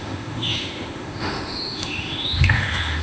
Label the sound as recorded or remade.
remade